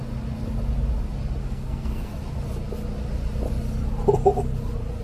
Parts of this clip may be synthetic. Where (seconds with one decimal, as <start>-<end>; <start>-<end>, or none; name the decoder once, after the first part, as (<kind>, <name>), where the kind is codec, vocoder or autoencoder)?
1.4-2.1 (codec, SNAC)